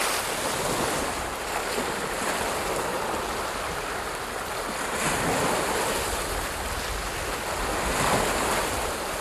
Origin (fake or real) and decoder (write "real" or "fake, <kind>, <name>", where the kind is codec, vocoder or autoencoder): real